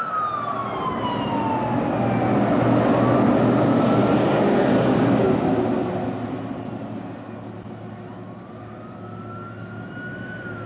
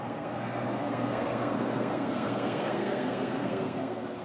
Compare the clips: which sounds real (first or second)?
first